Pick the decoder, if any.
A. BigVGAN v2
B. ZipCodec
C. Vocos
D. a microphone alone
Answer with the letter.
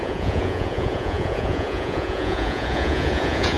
C